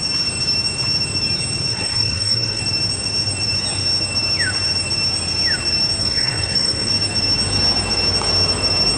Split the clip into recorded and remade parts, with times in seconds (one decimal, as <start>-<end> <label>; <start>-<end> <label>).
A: 0.0-1.7 recorded; 1.7-2.6 remade; 2.6-6.0 recorded; 6.0-6.9 remade; 6.9-9.0 recorded